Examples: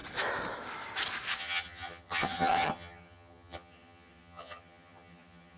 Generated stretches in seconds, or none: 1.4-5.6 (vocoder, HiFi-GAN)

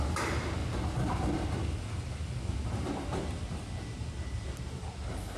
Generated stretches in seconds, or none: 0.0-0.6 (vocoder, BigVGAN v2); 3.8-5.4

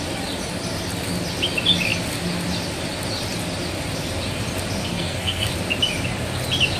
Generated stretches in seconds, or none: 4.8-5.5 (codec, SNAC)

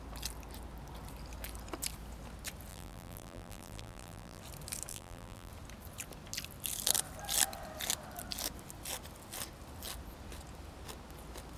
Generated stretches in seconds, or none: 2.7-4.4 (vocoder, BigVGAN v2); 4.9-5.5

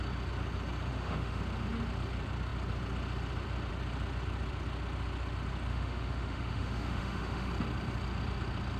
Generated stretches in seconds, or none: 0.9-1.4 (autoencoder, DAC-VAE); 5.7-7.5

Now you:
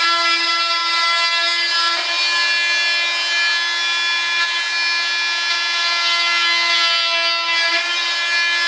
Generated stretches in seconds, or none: none